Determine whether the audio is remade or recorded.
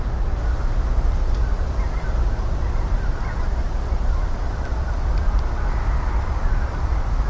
recorded